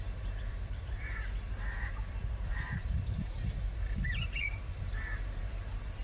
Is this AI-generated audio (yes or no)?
yes